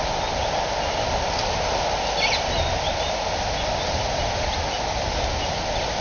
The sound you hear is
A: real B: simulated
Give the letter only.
A